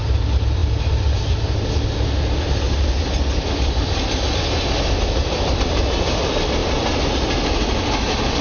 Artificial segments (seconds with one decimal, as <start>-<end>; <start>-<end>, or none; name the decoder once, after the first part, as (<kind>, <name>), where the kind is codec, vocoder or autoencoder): none